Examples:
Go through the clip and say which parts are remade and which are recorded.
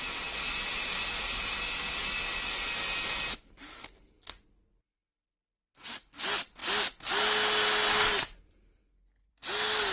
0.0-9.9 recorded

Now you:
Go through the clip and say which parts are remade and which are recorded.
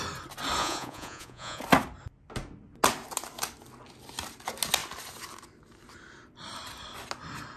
0.0-0.6 recorded; 0.6-1.6 remade; 1.6-7.6 recorded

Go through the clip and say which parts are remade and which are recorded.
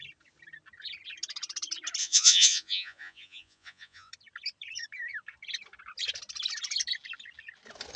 0.0-2.0 recorded; 2.0-4.1 remade; 4.1-8.0 recorded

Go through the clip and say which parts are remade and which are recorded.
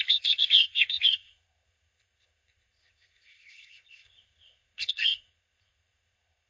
0.0-6.5 remade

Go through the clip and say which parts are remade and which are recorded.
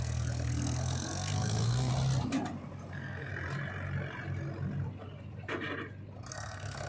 0.0-1.9 remade; 1.9-2.9 recorded; 2.9-3.3 remade; 3.3-6.3 recorded; 6.3-6.9 remade